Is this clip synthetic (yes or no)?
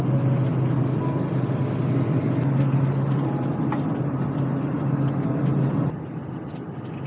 no